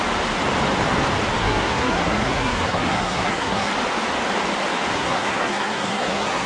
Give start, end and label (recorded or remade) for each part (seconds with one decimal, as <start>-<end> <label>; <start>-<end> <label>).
0.0-1.4 recorded; 1.4-3.7 remade; 3.7-4.9 recorded; 4.9-6.5 remade